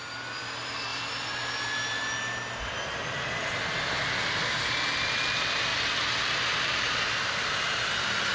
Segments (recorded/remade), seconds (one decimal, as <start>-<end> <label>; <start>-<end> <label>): 0.0-8.3 recorded